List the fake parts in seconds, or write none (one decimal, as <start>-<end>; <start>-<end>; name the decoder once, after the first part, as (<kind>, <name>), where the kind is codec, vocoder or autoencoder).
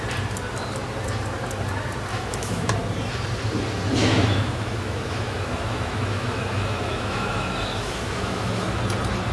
2.1-2.7 (autoencoder, DAC-VAE); 4.0-8.8